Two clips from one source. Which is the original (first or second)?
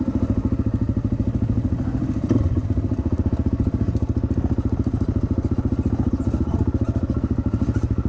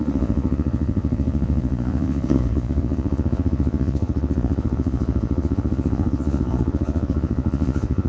first